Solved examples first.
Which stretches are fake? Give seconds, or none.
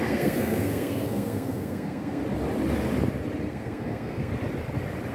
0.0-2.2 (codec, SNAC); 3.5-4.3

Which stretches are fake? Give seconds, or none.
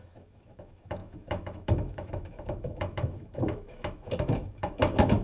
0.0-5.2 (autoencoder, DAC-VAE)